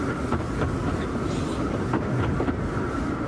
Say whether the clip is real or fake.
real